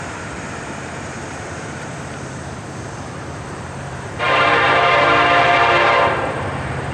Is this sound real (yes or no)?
no